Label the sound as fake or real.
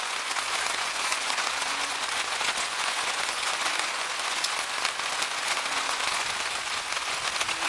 fake